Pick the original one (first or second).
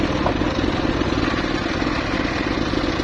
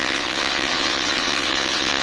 first